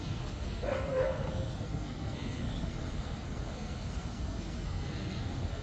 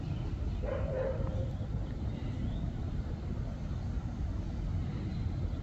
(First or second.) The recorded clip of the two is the second